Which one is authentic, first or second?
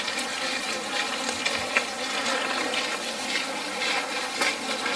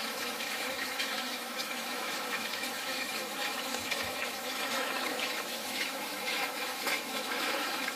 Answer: first